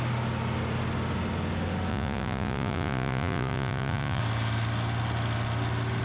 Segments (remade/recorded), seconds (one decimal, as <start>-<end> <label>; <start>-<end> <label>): 0.0-1.9 recorded; 1.9-4.2 remade; 4.2-6.0 recorded